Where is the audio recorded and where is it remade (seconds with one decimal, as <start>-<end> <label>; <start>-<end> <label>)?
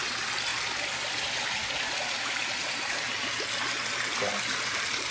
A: 0.0-5.1 recorded